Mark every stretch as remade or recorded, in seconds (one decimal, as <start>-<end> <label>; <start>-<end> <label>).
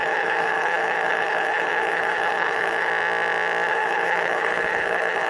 0.0-2.9 remade; 2.9-3.7 recorded; 3.7-5.3 remade